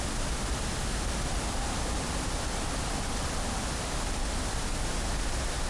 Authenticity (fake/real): real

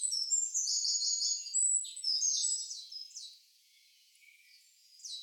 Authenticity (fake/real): fake